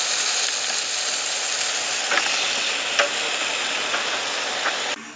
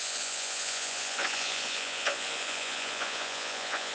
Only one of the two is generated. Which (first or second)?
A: second